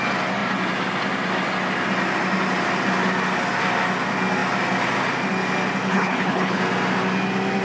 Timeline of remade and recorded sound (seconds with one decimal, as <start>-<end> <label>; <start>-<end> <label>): 0.0-5.9 recorded; 5.9-6.6 remade; 6.6-7.6 recorded